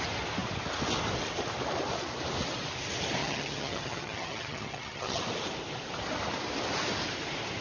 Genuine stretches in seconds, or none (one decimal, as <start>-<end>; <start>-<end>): 0.0-3.2; 5.2-7.6